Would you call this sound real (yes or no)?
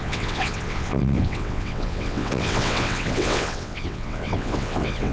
no